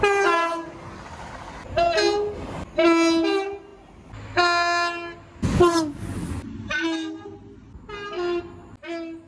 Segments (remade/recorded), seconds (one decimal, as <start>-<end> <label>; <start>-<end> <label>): 0.0-9.3 recorded